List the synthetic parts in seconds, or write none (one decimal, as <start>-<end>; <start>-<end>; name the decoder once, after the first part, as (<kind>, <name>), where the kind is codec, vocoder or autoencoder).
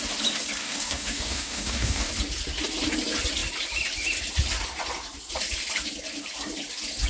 0.6-2.1 (codec, DAC)